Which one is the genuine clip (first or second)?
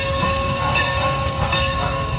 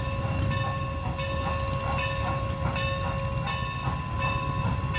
second